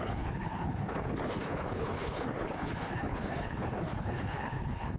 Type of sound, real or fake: fake